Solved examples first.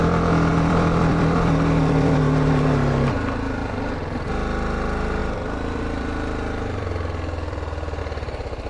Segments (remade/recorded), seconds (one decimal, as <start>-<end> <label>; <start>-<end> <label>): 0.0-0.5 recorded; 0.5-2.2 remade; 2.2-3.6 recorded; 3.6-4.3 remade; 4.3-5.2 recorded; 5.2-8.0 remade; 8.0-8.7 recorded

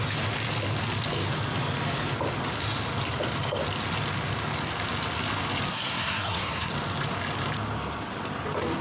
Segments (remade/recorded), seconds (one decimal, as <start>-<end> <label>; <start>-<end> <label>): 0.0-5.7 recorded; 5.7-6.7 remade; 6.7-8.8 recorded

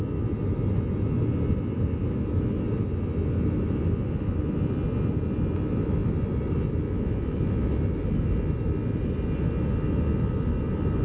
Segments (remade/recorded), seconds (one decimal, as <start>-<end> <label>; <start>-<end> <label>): 0.0-11.0 recorded